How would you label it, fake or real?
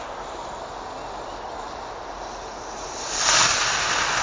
real